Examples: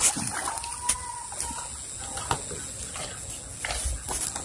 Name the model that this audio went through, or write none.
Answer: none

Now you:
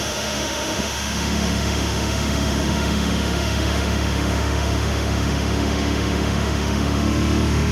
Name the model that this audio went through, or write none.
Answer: autoencoder, DAC-VAE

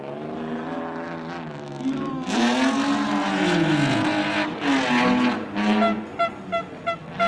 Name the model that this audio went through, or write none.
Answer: none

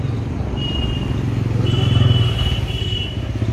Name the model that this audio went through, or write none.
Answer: none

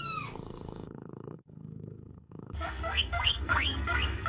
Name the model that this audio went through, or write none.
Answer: codec, SNAC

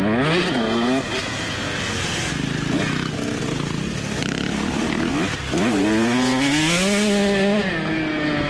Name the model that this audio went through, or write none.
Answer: none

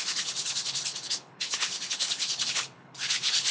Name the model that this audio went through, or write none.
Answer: codec, HILCodec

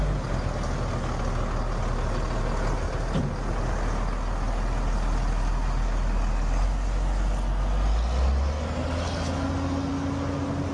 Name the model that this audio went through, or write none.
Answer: none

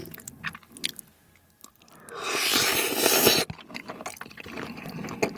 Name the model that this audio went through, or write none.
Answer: none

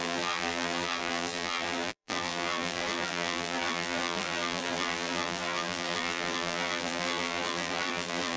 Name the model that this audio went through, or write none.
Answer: vocoder, BigVGAN v2